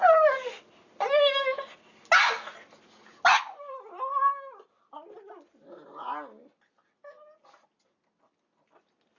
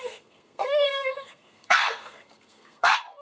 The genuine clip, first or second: first